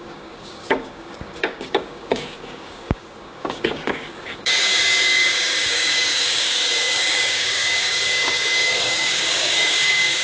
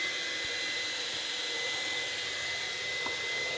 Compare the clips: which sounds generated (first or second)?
first